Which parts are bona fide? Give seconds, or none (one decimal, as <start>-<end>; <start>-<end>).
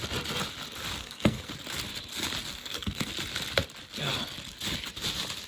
0.0-1.0; 1.5-2.6; 3.1-5.5